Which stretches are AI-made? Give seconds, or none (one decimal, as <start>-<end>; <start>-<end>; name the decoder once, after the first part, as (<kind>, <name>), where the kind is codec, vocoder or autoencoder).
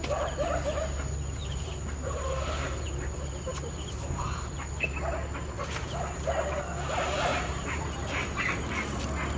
1.4-4.6 (vocoder, BigVGAN v2); 7.3-8.1